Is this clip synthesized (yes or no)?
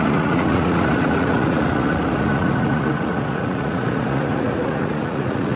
yes